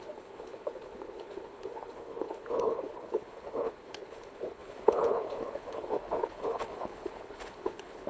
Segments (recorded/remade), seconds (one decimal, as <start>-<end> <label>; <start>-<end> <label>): 0.0-8.1 remade